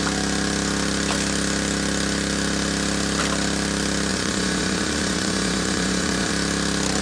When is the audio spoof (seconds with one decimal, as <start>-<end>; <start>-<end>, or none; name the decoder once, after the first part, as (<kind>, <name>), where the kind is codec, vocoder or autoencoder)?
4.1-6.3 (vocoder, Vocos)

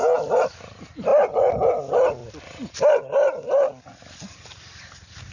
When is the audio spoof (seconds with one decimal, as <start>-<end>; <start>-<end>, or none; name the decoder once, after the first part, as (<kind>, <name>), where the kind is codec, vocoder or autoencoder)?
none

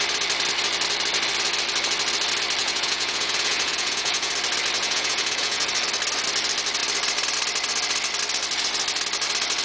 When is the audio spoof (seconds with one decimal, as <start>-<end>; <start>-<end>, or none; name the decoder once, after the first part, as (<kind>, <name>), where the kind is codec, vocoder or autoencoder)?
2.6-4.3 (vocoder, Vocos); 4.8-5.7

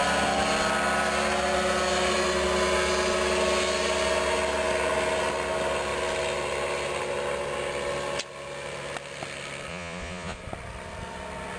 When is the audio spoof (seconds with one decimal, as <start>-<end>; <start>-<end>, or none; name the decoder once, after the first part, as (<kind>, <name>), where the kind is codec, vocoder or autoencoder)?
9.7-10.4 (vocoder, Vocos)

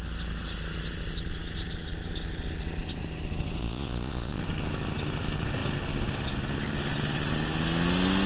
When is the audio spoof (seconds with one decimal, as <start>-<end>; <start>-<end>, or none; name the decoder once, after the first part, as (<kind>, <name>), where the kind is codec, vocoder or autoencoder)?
3.6-4.4 (vocoder, Vocos)

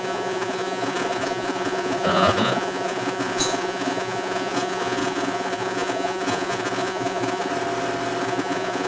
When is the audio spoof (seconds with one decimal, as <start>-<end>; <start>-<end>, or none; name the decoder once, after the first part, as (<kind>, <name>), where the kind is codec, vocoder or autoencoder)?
0.0-7.5 (vocoder, Vocos); 8.2-8.9

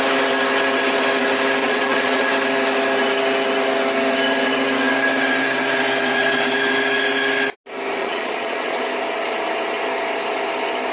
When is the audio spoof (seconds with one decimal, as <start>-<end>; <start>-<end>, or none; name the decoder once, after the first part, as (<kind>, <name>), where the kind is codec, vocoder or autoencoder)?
1.6-2.3 (vocoder, Vocos); 8.0-8.8

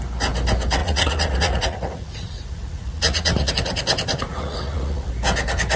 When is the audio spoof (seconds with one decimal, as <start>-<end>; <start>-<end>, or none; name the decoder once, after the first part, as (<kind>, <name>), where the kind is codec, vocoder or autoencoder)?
0.8-3.5 (vocoder, Vocos); 4.3-5.1